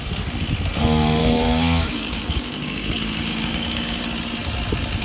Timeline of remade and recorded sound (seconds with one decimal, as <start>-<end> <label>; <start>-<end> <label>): 0.0-1.2 recorded; 1.2-4.0 remade; 4.0-5.0 recorded